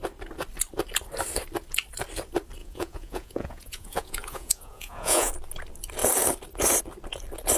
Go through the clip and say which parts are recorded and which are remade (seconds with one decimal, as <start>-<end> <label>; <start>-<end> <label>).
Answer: 0.0-2.6 recorded; 2.6-5.3 remade; 5.3-7.6 recorded